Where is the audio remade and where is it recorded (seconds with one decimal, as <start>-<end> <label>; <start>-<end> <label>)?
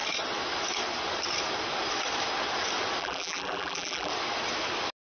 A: 0.0-3.0 recorded; 3.0-4.1 remade; 4.1-5.0 recorded